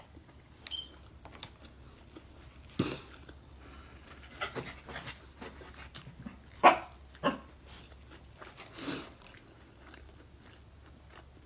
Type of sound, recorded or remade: recorded